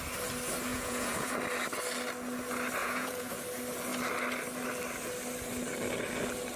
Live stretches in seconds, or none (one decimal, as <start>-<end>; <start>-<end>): 0.0-0.7; 1.3-2.8; 3.3-6.6